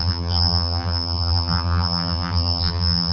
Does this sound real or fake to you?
fake